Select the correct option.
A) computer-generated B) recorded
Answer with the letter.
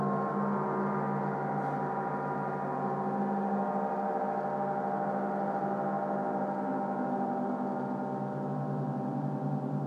B